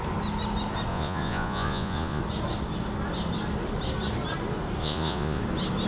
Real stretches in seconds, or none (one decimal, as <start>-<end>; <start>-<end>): 0.0-0.9; 2.2-4.8; 5.4-5.9